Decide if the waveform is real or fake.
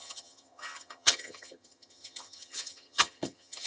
fake